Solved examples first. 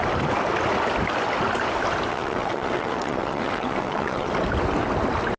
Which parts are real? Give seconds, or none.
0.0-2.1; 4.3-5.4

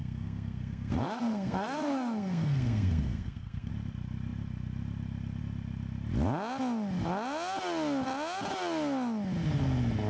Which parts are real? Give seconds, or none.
3.7-10.1